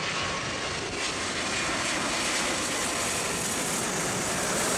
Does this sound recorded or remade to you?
recorded